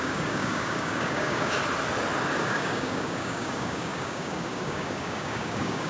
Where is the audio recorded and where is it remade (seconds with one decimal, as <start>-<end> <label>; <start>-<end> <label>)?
0.0-1.6 remade; 1.6-2.4 recorded; 2.4-5.9 remade